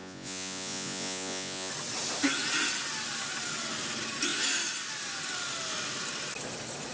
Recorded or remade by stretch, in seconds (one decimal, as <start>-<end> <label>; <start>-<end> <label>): 0.0-1.7 remade; 1.7-6.9 recorded